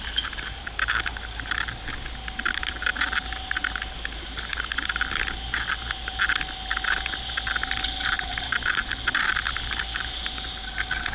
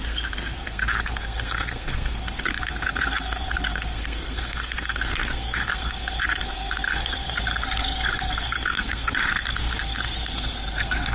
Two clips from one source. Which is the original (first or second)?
first